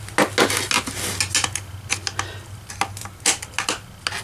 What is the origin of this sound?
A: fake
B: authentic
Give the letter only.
B